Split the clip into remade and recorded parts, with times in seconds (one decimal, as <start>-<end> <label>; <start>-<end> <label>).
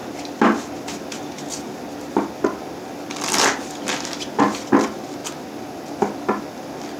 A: 0.0-7.0 recorded